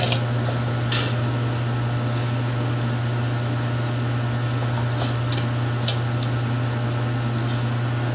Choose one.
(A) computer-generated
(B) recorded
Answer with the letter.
B